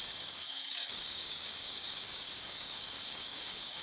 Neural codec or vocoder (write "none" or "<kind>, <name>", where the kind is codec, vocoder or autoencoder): codec, DAC